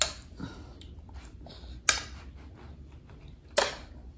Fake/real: real